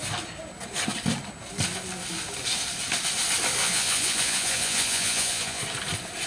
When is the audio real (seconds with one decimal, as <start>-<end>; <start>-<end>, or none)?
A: 0.0-3.6; 5.6-6.3